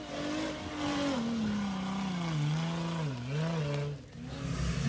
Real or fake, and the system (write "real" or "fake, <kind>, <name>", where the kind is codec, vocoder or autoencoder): real